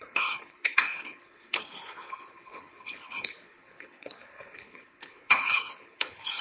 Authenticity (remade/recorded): remade